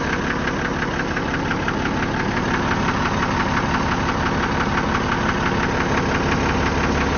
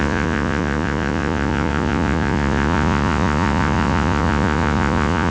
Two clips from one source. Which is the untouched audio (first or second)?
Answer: first